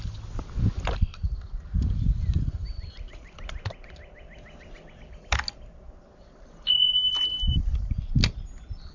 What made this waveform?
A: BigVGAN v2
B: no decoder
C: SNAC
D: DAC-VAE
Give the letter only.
B